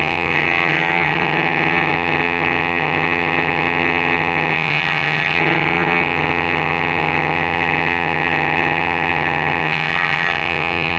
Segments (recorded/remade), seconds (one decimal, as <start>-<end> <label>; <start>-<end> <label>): 0.0-11.0 remade